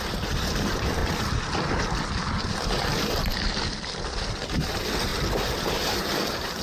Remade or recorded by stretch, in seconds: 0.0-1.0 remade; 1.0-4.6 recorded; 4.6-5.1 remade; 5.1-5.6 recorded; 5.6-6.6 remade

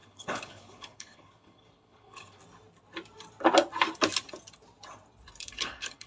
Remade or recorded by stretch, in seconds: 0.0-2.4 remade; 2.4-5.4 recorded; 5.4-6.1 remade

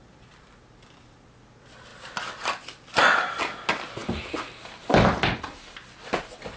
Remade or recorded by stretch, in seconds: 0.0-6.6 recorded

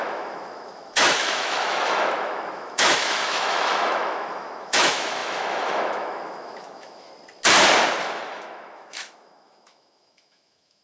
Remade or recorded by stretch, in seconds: 0.0-7.1 remade; 7.1-8.0 recorded; 8.0-10.8 remade

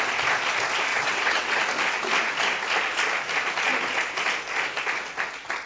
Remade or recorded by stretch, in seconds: 0.0-0.9 recorded; 0.9-1.6 remade; 1.6-5.7 recorded